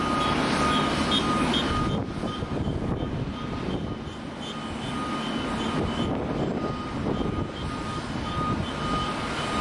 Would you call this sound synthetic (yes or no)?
no